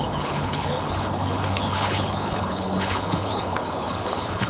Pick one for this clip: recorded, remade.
remade